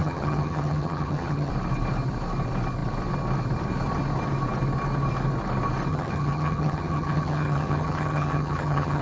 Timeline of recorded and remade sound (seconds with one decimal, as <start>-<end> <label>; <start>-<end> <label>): 0.0-1.5 remade; 1.5-5.9 recorded; 5.9-9.0 remade